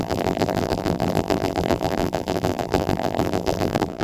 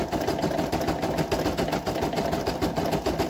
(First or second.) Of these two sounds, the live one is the second